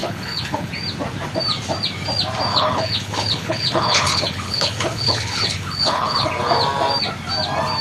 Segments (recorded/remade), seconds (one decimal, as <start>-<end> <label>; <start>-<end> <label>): 0.0-0.7 remade; 0.7-2.5 recorded; 2.5-6.3 remade; 6.3-7.8 recorded